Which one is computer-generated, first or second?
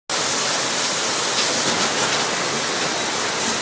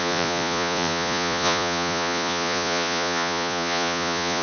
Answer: second